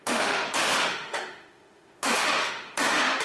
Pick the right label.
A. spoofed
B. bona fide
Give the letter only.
A